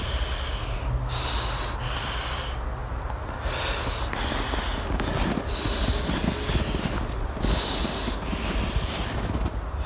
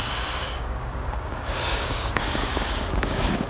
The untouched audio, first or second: first